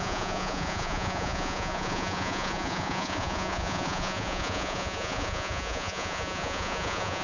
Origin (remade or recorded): remade